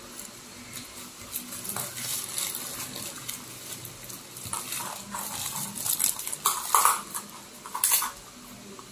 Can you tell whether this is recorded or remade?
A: recorded